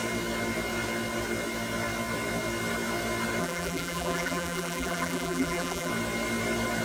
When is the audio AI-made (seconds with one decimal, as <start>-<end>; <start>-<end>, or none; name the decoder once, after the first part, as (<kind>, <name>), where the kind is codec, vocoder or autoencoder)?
3.4-5.9 (vocoder, BigVGAN v2)